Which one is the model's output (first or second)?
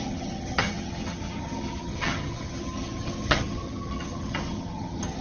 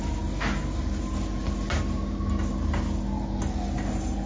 first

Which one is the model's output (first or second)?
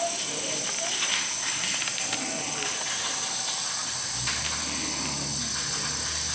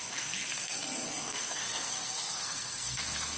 second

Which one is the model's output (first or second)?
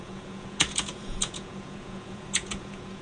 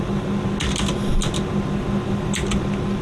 first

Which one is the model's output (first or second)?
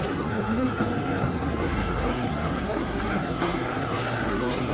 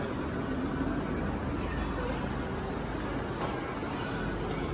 first